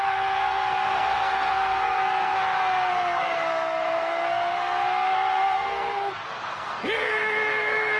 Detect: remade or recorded remade